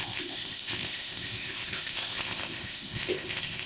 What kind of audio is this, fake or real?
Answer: fake